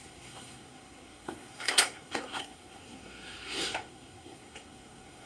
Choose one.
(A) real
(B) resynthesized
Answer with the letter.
B